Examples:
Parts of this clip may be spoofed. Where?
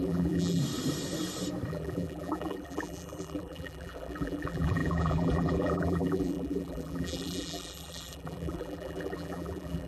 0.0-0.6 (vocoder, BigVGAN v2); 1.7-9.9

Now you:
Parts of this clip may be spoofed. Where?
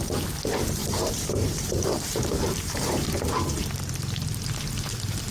0.8-3.9 (vocoder, BigVGAN v2)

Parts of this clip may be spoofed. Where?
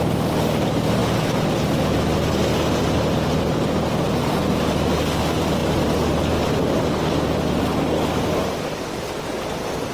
none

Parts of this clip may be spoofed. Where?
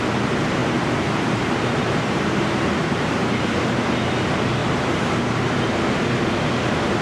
0.6-3.5 (vocoder, BigVGAN v2); 4.6-5.7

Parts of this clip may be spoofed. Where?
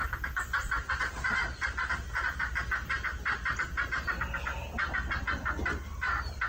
none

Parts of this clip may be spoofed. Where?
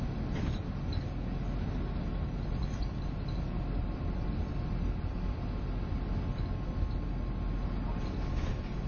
2.1-5.9 (vocoder, BigVGAN v2)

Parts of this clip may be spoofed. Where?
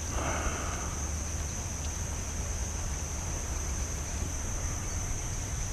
2.6-5.2 (vocoder, BigVGAN v2)